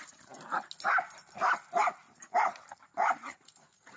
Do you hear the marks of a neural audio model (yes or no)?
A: no